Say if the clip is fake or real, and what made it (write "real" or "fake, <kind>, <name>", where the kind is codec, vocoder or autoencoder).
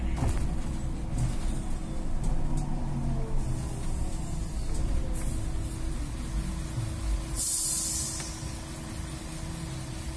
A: real